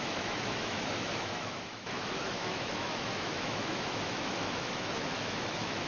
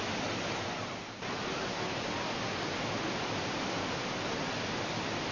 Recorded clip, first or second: second